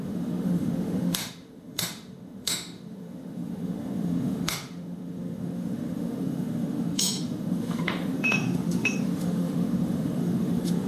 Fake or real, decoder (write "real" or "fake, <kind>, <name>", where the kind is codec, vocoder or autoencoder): fake, autoencoder, DAC-VAE